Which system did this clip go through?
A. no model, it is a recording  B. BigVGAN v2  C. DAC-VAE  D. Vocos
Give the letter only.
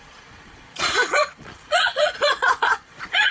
D